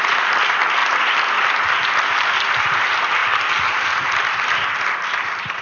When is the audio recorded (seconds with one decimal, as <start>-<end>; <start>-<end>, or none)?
0.0-5.6